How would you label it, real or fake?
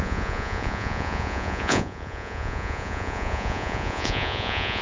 fake